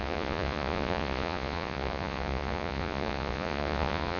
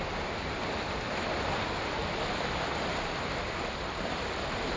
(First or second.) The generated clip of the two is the first